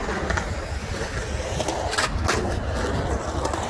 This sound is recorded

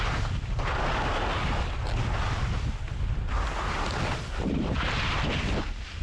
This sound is recorded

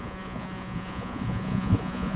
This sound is remade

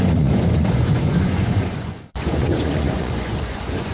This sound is remade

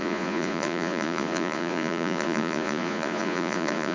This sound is remade